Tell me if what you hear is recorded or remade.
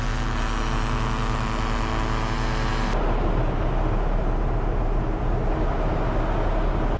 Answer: recorded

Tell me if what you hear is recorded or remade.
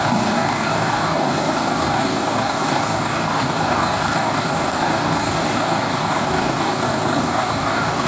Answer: remade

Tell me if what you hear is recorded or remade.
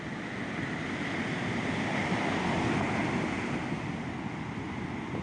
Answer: recorded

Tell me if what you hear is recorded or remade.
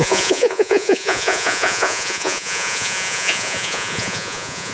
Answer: remade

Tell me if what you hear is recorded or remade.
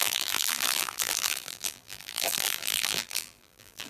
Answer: remade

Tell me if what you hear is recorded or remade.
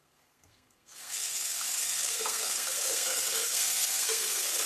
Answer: remade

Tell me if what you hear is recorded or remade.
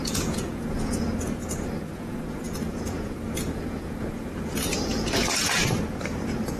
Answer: remade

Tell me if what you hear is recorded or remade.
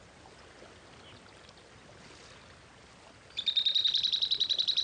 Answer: recorded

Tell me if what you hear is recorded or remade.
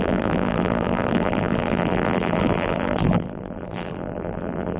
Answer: remade